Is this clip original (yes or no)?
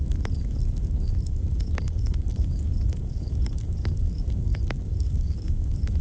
no